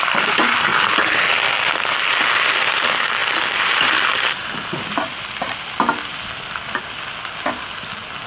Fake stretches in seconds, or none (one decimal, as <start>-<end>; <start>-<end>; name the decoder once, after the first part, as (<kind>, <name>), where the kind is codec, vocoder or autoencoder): none